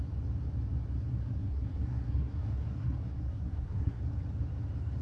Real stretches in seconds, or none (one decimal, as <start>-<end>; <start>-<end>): 0.0-1.1; 4.0-5.0